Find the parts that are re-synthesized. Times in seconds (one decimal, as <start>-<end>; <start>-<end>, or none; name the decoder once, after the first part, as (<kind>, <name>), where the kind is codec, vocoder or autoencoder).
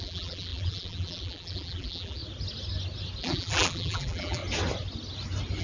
0.0-2.2 (vocoder, BigVGAN v2); 3.2-4.4